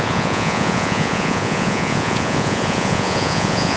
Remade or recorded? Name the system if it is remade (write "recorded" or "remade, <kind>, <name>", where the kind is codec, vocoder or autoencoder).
remade, vocoder, Vocos